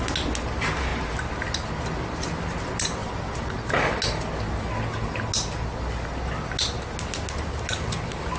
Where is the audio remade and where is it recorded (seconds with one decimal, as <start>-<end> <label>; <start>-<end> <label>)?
0.0-8.4 recorded